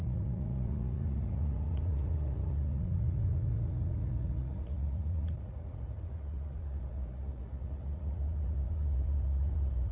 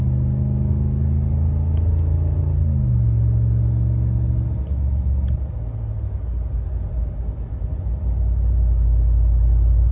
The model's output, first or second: first